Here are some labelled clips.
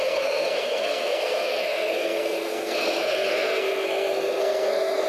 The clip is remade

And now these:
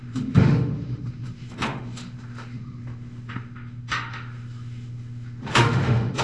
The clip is remade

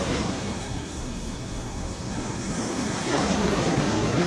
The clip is remade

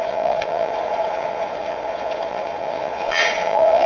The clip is remade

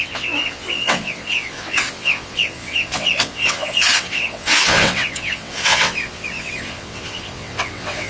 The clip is remade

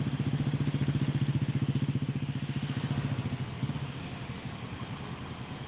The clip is recorded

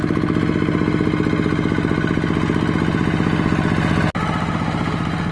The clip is recorded